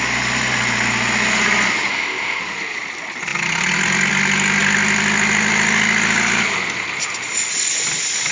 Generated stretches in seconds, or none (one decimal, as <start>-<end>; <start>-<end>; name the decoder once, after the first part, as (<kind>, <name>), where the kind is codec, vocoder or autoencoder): 1.9-2.4 (codec, ZipCodec)